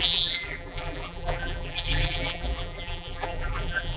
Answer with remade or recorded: remade